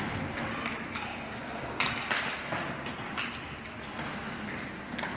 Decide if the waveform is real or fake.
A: real